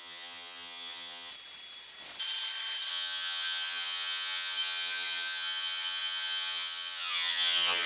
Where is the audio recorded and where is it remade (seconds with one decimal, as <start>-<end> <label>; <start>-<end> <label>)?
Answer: 0.0-1.3 remade; 1.3-2.9 recorded; 2.9-7.9 remade